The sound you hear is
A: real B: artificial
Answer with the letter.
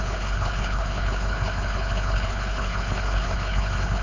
B